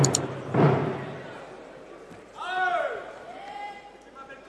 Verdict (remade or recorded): remade